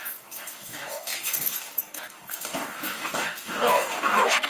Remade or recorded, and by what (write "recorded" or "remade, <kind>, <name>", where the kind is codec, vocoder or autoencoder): remade, codec, DAC